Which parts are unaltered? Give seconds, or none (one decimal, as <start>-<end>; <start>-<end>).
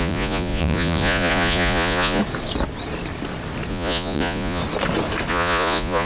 2.2-3.7; 4.6-5.3